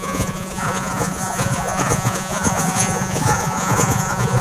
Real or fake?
fake